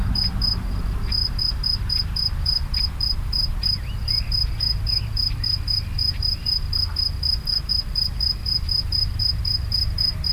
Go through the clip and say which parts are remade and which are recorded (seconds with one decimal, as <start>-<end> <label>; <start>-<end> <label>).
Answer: 0.0-1.2 remade; 1.2-2.4 recorded; 2.4-10.3 remade